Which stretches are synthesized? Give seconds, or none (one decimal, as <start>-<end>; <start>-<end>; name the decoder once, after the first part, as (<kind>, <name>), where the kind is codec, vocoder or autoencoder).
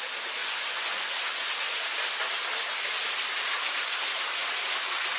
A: 0.4-1.1 (vocoder, Vocos)